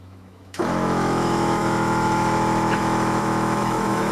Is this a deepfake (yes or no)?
yes